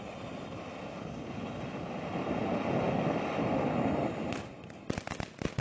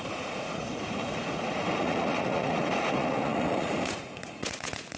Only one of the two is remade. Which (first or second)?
second